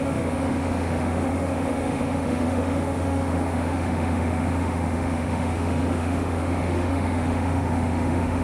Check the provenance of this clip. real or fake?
fake